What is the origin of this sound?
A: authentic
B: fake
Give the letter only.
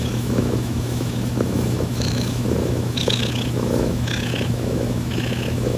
B